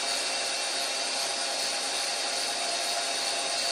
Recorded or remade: recorded